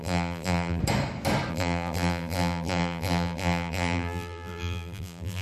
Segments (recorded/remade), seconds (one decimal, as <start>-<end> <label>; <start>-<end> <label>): 0.0-0.8 remade; 0.8-1.5 recorded; 1.5-5.4 remade